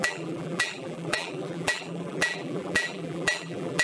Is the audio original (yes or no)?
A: no